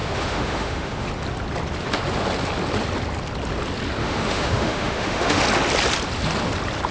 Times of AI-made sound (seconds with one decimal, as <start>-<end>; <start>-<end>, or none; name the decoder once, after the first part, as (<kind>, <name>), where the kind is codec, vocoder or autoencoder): 0.0-1.1 (autoencoder, DAC-VAE); 4.0-5.4